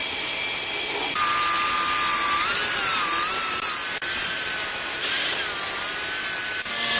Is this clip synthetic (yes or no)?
no